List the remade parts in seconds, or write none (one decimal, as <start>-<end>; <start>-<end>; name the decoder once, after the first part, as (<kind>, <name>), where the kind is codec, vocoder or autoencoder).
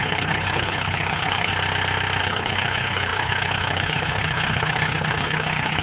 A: 0.0-1.5 (codec, HILCodec); 2.2-5.8